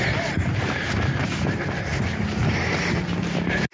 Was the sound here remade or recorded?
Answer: recorded